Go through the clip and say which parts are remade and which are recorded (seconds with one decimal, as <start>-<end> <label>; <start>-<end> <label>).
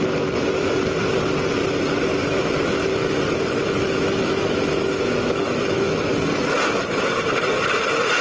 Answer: 0.0-2.2 recorded; 2.2-6.1 remade; 6.1-8.2 recorded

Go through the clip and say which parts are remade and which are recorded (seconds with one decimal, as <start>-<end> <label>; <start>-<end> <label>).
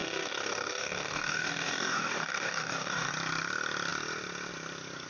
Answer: 0.0-3.1 remade; 3.1-5.1 recorded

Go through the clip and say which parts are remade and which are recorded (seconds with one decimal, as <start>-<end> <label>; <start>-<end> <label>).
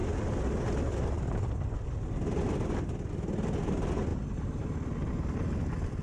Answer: 0.0-6.0 recorded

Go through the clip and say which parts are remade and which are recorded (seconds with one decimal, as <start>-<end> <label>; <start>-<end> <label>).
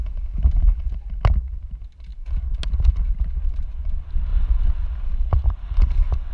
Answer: 0.0-6.3 recorded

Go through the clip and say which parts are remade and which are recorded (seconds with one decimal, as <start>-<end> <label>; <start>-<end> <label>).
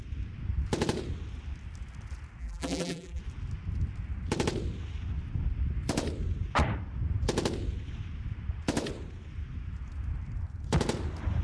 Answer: 0.0-2.4 recorded; 2.4-3.2 remade; 3.2-11.4 recorded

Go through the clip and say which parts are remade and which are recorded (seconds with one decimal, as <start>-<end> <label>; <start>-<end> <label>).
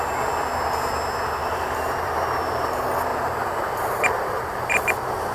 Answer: 0.0-1.4 recorded; 1.4-2.1 remade; 2.1-3.1 recorded; 3.1-4.8 remade; 4.8-5.3 recorded